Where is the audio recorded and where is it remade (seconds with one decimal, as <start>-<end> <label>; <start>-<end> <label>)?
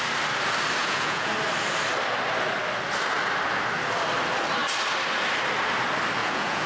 0.0-0.8 recorded; 0.8-1.3 remade; 1.3-6.2 recorded; 6.2-6.7 remade